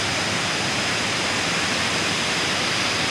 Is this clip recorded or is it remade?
recorded